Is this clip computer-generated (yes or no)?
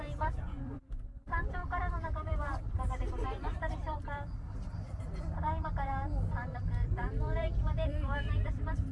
yes